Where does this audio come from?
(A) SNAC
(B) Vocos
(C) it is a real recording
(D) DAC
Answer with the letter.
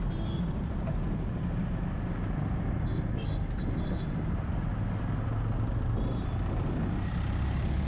C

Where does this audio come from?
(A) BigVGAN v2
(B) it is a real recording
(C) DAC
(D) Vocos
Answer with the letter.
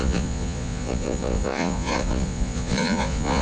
D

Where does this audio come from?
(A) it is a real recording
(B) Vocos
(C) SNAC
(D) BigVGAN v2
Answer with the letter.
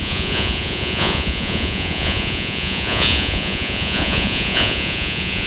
B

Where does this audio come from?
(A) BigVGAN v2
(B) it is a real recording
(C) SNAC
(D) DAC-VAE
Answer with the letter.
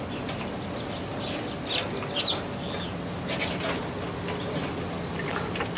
B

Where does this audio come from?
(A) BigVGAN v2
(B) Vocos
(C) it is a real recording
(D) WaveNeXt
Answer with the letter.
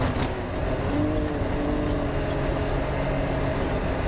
C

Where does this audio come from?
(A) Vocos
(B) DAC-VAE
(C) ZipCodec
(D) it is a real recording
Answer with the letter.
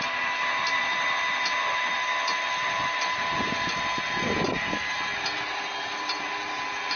D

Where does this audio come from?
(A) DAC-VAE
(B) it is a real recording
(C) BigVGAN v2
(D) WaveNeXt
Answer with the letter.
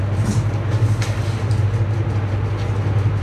B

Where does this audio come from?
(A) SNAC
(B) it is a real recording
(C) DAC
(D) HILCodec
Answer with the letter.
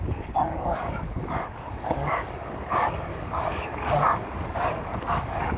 C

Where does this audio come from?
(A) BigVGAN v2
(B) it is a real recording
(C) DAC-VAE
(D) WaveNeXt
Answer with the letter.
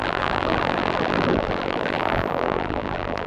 A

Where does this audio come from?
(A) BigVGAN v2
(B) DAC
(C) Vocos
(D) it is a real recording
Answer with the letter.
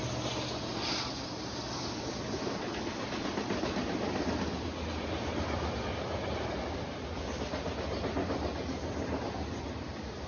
D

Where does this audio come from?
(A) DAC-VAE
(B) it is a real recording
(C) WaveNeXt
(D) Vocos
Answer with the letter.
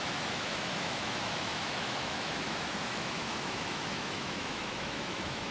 A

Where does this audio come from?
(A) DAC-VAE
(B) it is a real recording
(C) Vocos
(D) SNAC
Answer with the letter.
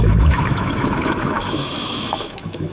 A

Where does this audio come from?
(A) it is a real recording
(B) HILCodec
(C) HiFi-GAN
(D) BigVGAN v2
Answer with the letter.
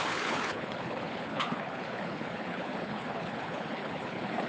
B